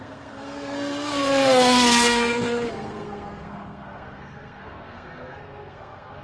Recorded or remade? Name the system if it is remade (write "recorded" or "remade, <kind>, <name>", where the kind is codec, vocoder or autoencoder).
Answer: remade, codec, SNAC